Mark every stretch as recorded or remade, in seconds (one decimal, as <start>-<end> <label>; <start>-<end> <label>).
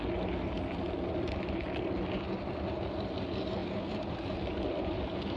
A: 0.0-5.4 recorded